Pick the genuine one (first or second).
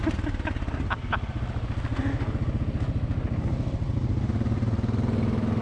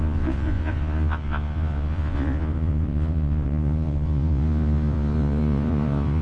first